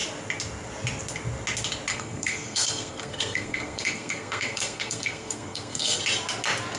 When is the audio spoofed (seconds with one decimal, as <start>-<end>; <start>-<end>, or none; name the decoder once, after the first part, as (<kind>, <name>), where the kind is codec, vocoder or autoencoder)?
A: 1.9-6.0 (codec, SNAC)